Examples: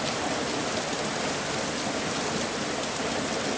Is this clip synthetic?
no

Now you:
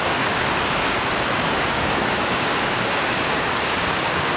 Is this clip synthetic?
yes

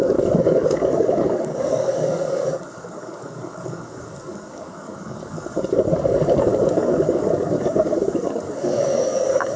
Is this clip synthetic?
yes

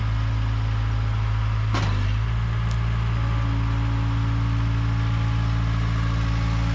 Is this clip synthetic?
no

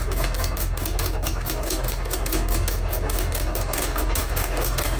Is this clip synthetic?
yes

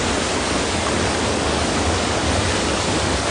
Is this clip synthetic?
yes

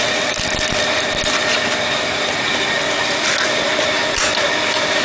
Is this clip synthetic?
no